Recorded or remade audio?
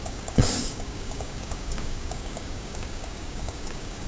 remade